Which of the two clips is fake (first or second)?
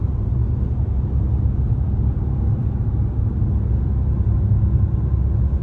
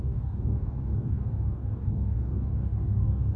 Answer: second